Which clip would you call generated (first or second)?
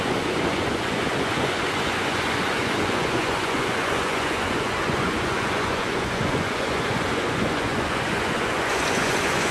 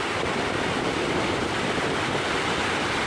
first